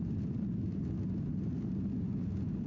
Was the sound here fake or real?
real